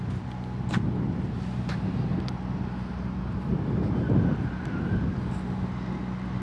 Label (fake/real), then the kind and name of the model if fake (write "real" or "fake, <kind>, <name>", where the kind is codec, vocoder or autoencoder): real